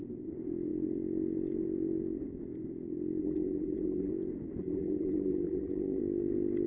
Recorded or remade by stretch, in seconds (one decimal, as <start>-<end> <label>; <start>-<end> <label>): 0.0-3.2 recorded; 3.2-4.1 remade; 4.1-4.6 recorded; 4.6-6.0 remade; 6.0-6.7 recorded